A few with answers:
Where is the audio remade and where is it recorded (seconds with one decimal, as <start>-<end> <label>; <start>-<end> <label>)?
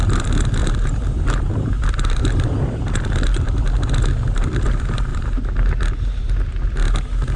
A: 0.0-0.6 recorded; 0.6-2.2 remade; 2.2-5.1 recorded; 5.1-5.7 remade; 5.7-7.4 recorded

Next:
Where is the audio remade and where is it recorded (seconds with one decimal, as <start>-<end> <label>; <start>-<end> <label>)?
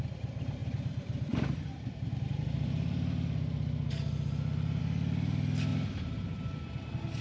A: 0.0-0.6 recorded; 0.6-4.8 remade; 4.8-5.7 recorded; 5.7-6.6 remade; 6.6-7.2 recorded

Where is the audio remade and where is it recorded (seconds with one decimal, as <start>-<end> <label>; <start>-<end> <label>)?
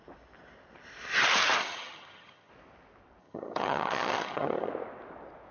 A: 0.0-1.6 recorded; 1.6-2.5 remade; 2.5-3.2 recorded; 3.2-4.7 remade; 4.7-5.5 recorded